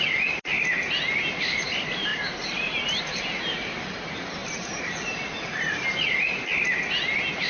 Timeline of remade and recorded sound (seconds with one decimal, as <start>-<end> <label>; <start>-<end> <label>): 0.0-7.5 recorded